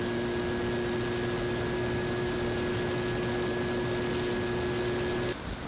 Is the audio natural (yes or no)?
yes